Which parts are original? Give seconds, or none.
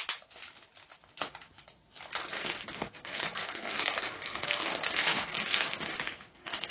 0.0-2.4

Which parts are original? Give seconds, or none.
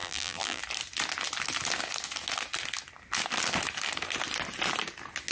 0.6-5.3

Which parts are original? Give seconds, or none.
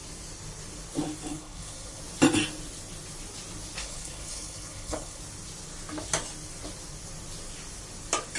0.0-1.3; 2.0-3.8; 5.2-8.4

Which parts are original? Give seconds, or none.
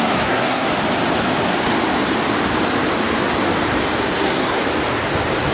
0.7-4.0; 4.6-5.5